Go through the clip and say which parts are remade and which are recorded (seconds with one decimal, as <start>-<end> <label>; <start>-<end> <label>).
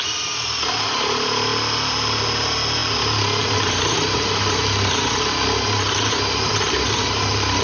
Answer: 0.0-7.6 recorded